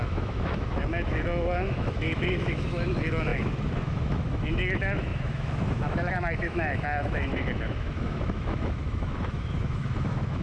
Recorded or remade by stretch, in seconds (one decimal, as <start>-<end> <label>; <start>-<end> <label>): 0.0-10.4 remade